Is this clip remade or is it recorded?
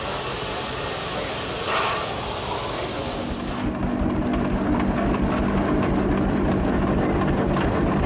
recorded